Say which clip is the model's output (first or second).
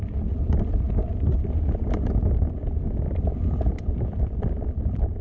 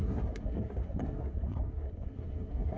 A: second